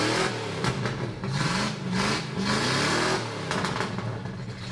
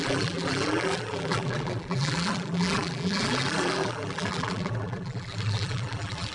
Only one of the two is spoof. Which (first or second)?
second